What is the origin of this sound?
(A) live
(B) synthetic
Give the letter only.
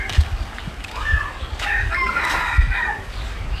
B